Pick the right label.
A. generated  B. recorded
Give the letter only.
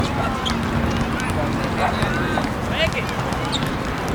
B